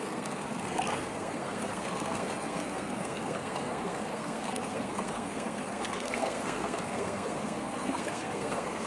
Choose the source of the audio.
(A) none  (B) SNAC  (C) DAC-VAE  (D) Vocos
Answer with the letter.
B